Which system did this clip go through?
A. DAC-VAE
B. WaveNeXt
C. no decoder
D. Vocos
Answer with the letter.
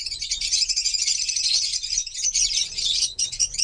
D